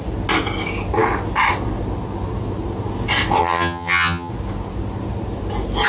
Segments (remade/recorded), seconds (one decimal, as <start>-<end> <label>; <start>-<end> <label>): 0.0-3.4 recorded; 3.4-4.3 remade; 4.3-5.9 recorded